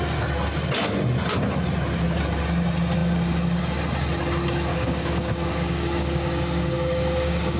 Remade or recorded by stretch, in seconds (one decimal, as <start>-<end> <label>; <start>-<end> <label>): 0.0-4.7 recorded; 4.7-7.6 remade